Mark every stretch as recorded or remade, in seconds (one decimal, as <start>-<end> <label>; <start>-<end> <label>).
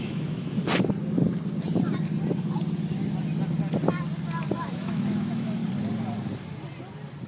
0.0-0.6 remade; 0.6-4.5 recorded; 4.5-5.6 remade; 5.6-7.3 recorded